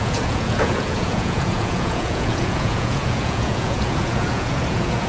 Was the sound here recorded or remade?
remade